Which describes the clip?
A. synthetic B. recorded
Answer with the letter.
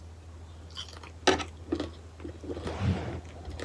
B